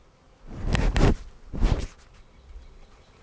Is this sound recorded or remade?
recorded